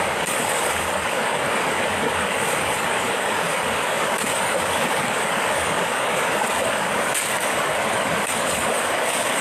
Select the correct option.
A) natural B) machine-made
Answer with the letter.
B